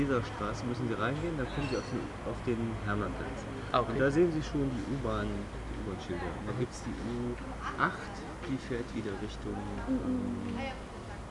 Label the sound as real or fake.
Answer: real